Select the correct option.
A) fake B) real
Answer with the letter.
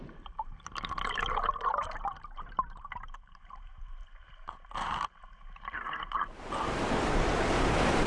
A